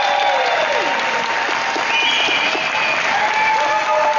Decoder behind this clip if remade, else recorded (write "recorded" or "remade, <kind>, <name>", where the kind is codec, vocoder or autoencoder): recorded